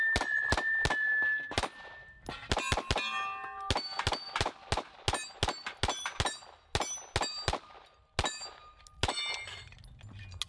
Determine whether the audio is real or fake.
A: real